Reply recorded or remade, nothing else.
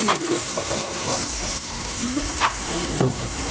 remade